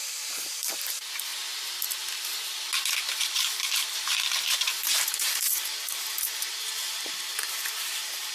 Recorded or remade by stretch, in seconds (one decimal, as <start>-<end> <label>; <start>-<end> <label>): 0.0-1.3 remade; 1.3-3.3 recorded; 3.3-8.3 remade